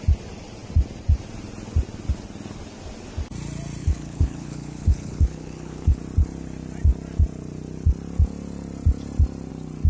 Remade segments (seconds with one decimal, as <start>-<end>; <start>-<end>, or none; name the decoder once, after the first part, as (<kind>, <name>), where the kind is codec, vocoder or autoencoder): 3.8-6.0 (codec, HILCodec)